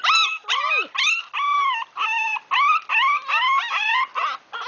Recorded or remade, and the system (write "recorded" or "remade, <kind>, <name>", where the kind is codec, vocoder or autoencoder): remade, vocoder, BigVGAN v2